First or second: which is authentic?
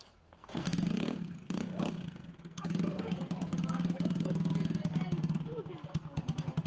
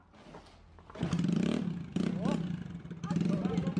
second